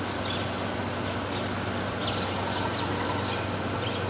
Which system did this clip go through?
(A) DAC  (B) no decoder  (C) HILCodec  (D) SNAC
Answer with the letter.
B